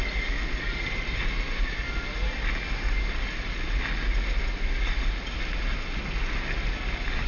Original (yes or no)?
yes